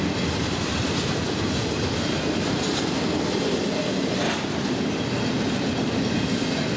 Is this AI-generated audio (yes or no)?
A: no